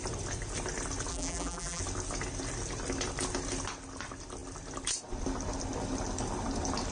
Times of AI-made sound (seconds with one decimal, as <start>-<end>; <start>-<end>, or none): 1.1-1.8